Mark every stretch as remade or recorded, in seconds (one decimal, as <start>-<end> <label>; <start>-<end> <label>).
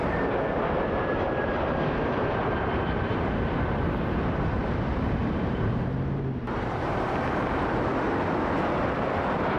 0.0-5.2 recorded; 5.2-9.6 remade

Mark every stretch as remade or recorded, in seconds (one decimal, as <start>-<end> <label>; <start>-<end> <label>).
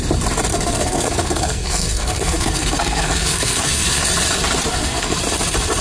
0.0-0.5 recorded; 0.5-4.0 remade; 4.0-4.7 recorded; 4.7-5.2 remade; 5.2-5.8 recorded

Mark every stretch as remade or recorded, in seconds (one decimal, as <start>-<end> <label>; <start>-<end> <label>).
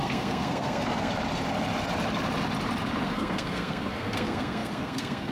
0.0-1.1 remade; 1.1-3.0 recorded; 3.0-5.3 remade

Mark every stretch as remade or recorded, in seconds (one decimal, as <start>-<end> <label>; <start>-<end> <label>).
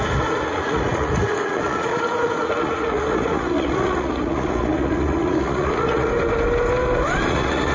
0.0-6.1 remade; 6.1-7.3 recorded; 7.3-7.7 remade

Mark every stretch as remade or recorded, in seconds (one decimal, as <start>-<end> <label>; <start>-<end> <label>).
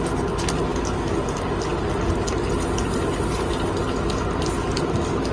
0.0-5.3 recorded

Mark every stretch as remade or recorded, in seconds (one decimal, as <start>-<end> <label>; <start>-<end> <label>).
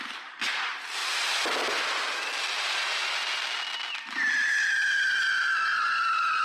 0.0-5.3 recorded; 5.3-6.4 remade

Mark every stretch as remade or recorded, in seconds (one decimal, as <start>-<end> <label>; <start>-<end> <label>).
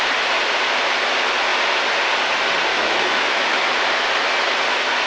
0.0-2.7 recorded; 2.7-3.7 remade; 3.7-5.1 recorded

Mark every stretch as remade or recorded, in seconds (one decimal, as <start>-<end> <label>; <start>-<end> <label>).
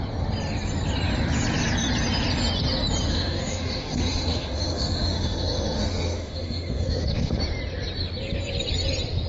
0.0-3.1 recorded; 3.1-7.4 remade; 7.4-9.3 recorded